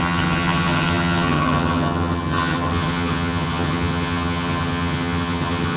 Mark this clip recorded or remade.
remade